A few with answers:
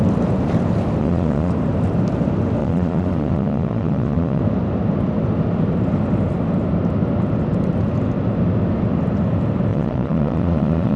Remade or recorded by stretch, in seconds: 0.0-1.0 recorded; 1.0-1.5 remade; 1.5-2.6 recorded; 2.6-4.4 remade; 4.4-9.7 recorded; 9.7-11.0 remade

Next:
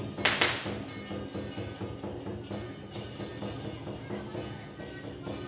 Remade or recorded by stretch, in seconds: 0.0-5.5 recorded

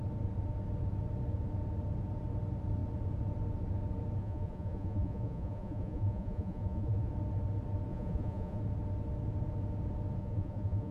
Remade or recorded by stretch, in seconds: 0.0-4.2 recorded; 4.2-7.1 remade; 7.1-7.9 recorded; 7.9-8.6 remade; 8.6-10.2 recorded; 10.2-10.9 remade